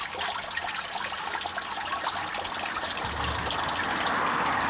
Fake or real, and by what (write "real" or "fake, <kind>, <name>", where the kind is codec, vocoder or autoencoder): real